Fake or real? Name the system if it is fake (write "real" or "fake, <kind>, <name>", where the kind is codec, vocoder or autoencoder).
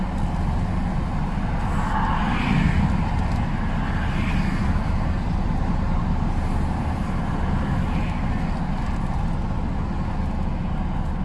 real